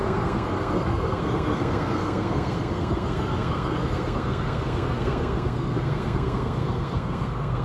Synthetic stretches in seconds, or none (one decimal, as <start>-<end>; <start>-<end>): 0.0-7.6